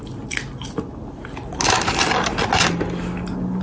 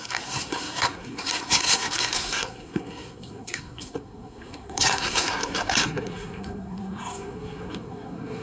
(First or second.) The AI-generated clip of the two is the second